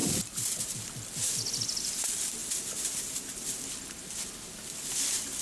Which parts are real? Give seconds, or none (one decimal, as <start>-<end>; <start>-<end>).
2.4-3.0